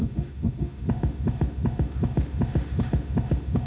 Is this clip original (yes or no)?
no